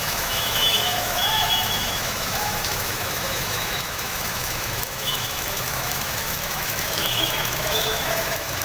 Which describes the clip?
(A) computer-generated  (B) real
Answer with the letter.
A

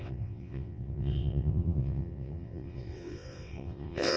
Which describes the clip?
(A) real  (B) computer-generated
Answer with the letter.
B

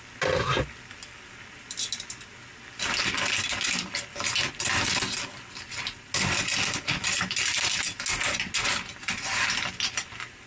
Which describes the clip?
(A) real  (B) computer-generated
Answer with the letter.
A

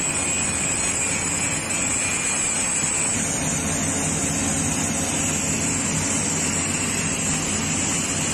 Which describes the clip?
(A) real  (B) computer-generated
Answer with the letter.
A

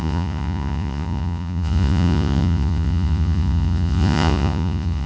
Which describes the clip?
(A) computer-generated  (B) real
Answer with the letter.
A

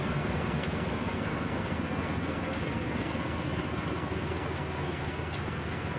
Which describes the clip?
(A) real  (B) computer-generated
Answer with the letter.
B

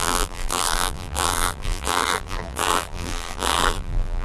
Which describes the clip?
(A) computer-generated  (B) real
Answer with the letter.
A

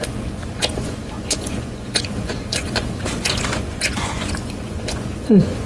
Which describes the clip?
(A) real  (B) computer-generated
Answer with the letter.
B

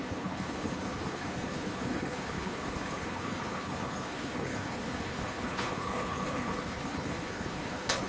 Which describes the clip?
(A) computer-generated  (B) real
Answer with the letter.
A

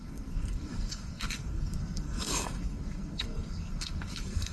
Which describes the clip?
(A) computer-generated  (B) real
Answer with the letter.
A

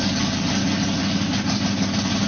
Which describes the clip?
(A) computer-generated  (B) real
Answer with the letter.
B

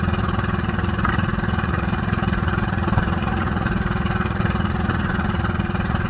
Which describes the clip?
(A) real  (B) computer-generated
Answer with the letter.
B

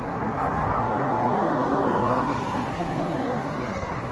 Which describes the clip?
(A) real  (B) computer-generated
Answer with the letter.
B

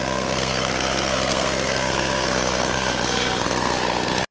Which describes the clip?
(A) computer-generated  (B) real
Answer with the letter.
A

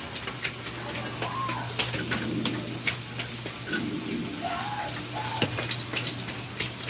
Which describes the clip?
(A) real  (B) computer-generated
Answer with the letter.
A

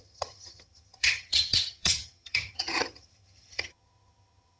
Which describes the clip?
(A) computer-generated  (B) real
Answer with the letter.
A